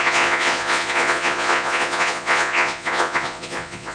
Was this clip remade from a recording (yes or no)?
yes